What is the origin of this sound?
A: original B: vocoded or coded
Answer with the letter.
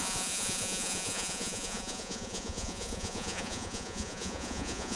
B